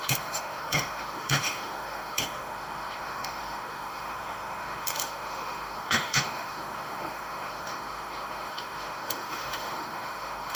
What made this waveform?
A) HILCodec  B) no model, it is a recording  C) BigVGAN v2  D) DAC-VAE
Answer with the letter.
D